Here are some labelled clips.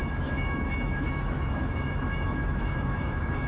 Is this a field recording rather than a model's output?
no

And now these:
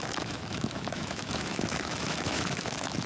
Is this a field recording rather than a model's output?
no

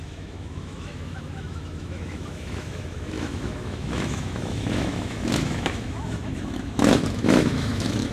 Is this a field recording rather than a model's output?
no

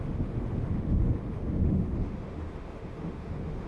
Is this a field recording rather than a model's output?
no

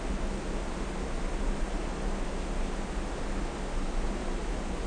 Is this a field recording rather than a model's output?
yes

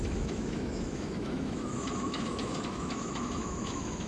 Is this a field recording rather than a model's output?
no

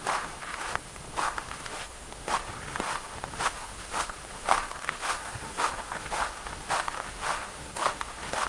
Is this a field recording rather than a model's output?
no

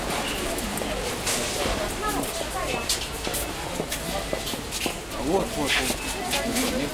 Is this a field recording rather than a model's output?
yes